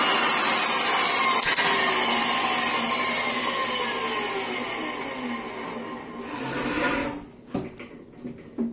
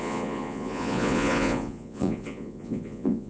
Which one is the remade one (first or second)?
second